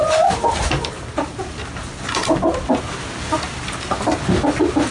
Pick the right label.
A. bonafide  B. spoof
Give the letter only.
A